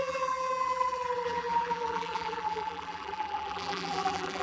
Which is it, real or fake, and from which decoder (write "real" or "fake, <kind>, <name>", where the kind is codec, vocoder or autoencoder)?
fake, vocoder, BigVGAN v2